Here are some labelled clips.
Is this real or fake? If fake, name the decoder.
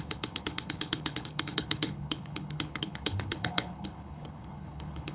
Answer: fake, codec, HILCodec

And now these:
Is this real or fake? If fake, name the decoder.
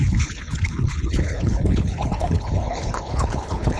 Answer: fake, codec, HILCodec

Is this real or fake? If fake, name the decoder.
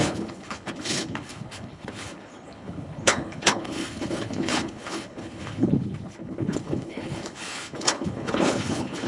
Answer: fake, codec, HILCodec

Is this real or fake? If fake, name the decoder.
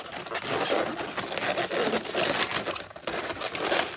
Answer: real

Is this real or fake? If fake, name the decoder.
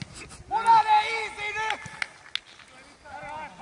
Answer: real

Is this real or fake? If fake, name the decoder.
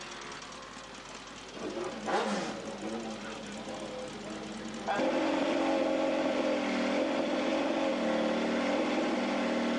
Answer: real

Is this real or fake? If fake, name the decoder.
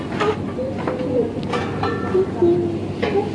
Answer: real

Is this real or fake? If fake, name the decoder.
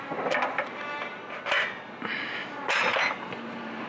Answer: real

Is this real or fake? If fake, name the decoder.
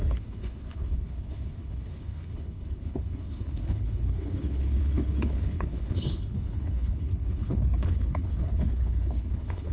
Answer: fake, codec, HILCodec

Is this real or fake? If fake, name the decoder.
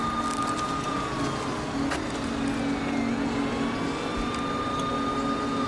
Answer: real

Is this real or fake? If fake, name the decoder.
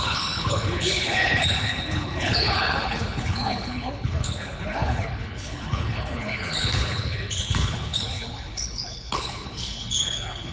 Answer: fake, codec, HILCodec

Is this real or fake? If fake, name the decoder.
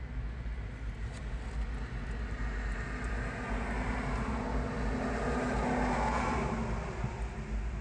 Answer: real